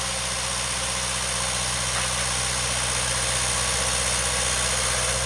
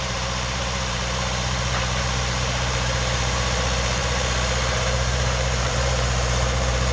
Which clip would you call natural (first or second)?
first